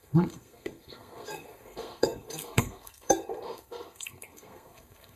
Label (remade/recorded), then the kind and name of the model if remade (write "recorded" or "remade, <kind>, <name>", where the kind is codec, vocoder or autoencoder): remade, codec, SNAC